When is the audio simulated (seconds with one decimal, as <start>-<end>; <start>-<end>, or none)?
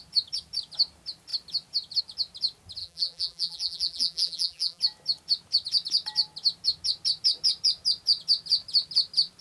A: 2.8-4.8